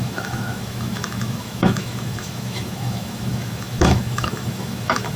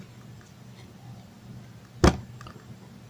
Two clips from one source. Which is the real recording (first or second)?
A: second